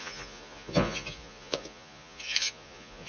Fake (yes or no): yes